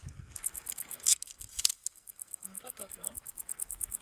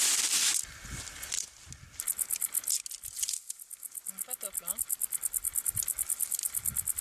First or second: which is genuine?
second